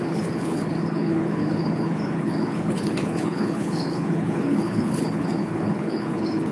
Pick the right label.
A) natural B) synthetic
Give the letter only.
B